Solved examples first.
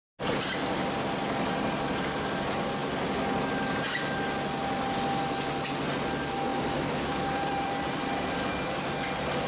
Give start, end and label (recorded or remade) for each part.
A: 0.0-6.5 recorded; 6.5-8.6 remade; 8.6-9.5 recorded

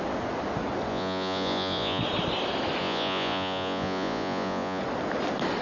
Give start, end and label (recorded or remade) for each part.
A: 0.0-0.9 recorded; 0.9-2.0 remade; 2.0-2.8 recorded; 2.8-4.8 remade; 4.8-5.6 recorded